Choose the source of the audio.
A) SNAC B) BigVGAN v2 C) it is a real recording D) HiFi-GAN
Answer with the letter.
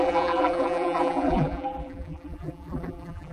B